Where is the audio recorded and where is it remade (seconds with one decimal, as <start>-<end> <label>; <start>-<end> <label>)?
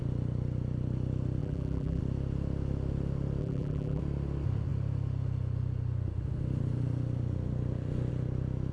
0.0-1.4 recorded; 1.4-2.0 remade; 2.0-3.4 recorded; 3.4-4.0 remade; 4.0-8.7 recorded